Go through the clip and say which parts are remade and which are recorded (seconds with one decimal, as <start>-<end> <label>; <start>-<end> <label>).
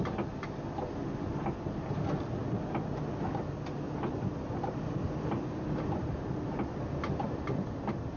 0.0-8.2 recorded